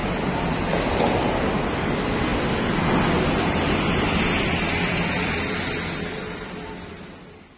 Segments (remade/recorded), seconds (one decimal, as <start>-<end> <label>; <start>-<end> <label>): 0.0-7.6 recorded